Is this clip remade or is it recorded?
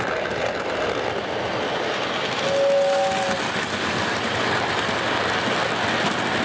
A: recorded